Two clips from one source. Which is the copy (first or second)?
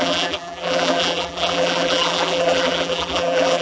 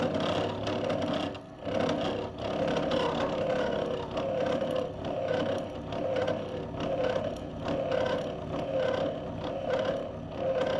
first